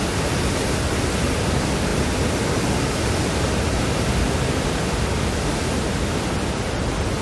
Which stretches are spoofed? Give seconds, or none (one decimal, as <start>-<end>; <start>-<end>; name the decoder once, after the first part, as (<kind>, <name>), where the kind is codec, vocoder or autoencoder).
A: none

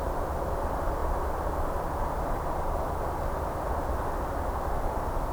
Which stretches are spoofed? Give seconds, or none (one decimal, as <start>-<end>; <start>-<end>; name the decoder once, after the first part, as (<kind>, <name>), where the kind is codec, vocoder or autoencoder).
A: none

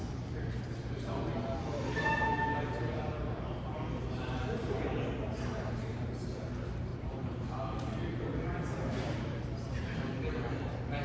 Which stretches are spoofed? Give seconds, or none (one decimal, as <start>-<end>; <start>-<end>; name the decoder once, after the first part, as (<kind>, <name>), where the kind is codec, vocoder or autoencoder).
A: 5.9-6.5 (vocoder, BigVGAN v2); 6.9-7.5

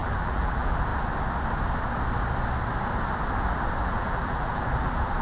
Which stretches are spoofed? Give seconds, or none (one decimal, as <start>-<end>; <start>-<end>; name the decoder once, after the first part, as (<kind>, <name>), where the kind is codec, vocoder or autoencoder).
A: 0.0-0.9 (vocoder, BigVGAN v2); 3.8-5.2

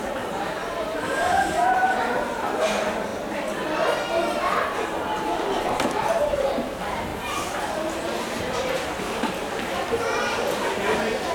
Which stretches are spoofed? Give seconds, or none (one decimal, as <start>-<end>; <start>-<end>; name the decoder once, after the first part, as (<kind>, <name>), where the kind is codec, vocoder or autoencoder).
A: 0.0-3.1 (vocoder, BigVGAN v2); 4.4-11.3